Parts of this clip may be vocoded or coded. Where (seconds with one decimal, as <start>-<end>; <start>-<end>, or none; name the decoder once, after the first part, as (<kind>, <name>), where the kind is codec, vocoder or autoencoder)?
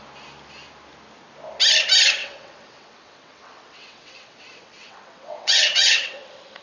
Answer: 2.2-6.6 (vocoder, WaveNeXt)